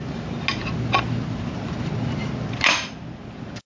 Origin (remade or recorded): recorded